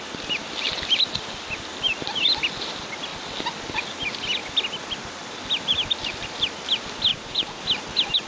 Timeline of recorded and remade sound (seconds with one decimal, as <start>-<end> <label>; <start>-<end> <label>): 0.0-7.1 recorded; 7.1-7.6 remade; 7.6-8.3 recorded